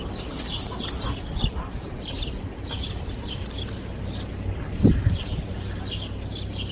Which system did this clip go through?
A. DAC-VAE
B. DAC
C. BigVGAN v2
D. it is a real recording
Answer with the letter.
D